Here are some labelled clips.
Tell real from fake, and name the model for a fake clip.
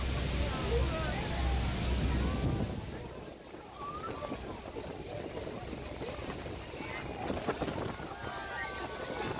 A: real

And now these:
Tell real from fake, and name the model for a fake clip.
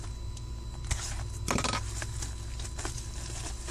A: real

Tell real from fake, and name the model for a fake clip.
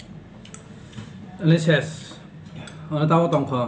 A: real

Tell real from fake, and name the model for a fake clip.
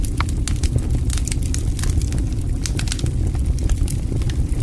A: real